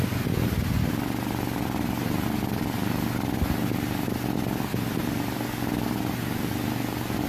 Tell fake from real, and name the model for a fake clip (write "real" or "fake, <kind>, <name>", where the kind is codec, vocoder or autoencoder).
real